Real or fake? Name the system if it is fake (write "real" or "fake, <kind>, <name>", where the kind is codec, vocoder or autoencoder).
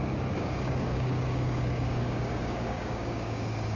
fake, codec, DAC